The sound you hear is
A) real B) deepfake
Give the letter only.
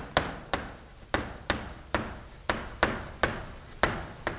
A